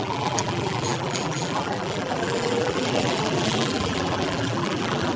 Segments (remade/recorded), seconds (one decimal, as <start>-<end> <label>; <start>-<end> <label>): 0.0-5.2 remade